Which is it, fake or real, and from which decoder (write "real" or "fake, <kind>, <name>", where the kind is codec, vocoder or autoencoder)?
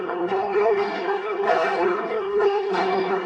fake, codec, SNAC